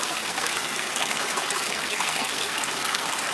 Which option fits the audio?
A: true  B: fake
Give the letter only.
B